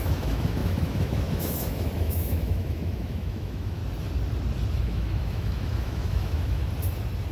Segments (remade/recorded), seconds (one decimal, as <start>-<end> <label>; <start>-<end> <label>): 0.0-3.8 remade; 3.8-4.8 recorded; 4.8-6.6 remade; 6.6-7.3 recorded